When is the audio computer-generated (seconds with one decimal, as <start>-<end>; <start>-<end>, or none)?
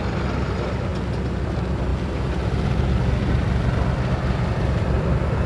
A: 0.0-0.9; 1.4-5.5